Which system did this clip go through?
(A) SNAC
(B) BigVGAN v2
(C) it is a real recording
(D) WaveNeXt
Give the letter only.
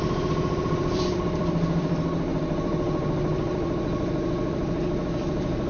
B